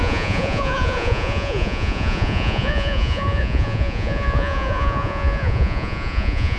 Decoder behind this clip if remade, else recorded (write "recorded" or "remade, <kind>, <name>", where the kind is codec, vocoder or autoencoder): remade, vocoder, Vocos